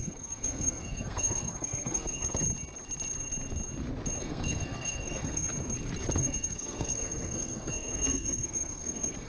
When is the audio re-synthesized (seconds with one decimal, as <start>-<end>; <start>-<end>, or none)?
0.0-2.3; 4.2-5.5; 6.2-9.3